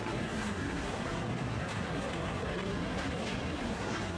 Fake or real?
fake